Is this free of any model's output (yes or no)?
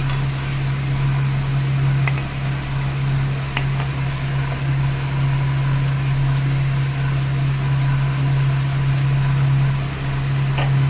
yes